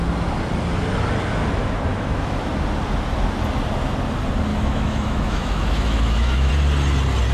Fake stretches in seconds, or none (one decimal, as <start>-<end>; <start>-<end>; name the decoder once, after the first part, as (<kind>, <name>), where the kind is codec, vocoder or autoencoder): 1.9-2.5 (autoencoder, DAC-VAE); 4.5-6.5